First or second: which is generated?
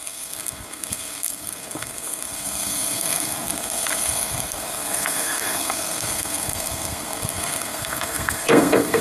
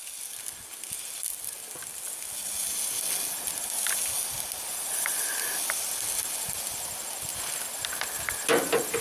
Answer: first